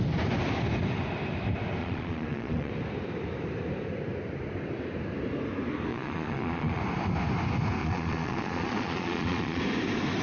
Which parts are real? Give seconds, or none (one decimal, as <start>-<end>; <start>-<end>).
0.0-1.8; 2.7-5.9; 6.8-7.8; 9.6-10.2